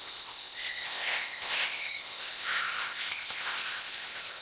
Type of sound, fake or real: fake